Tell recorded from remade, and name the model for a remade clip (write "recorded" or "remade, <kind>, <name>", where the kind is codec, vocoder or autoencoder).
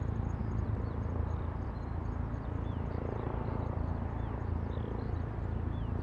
recorded